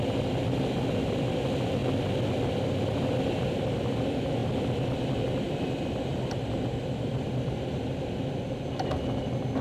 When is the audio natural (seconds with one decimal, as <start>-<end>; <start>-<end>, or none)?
0.0-9.6